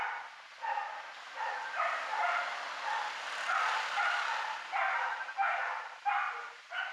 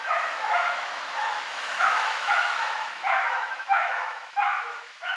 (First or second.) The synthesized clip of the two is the second